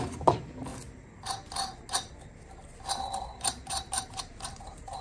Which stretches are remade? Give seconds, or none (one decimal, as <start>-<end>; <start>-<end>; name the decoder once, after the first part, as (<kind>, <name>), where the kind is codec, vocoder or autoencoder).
0.0-0.7 (vocoder, BigVGAN v2); 3.7-5.0